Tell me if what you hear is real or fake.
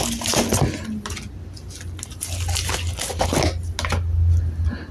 real